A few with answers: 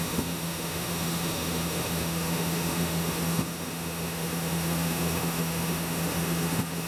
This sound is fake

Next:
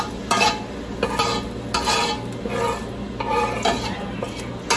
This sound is real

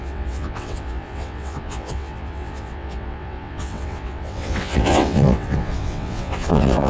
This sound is fake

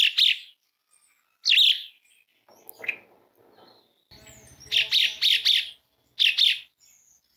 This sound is real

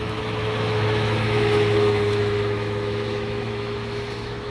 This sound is fake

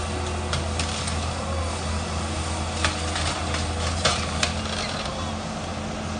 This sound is real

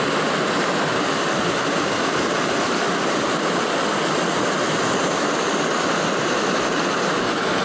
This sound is real